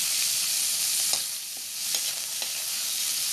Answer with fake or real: real